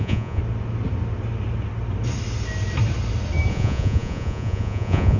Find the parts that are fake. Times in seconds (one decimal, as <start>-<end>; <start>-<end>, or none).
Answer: 0.0-0.4; 3.5-5.2